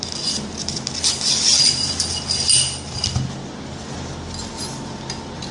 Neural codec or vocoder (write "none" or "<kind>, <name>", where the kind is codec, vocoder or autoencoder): none